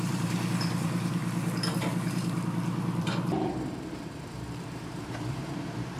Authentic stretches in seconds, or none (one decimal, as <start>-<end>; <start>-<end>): 1.2-1.7; 2.2-3.0